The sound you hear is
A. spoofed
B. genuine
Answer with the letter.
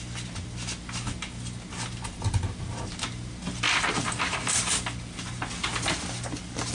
B